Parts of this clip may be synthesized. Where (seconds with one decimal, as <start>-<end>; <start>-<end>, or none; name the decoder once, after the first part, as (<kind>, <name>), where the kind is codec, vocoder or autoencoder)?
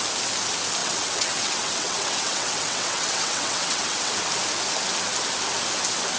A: 0.8-4.1 (vocoder, WaveNeXt)